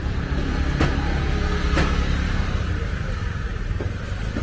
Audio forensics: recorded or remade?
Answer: recorded